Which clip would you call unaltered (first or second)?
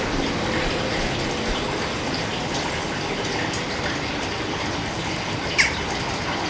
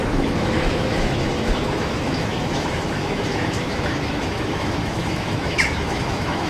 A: first